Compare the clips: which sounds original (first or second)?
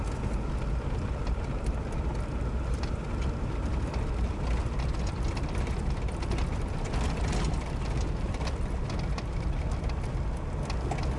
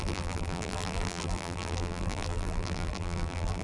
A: first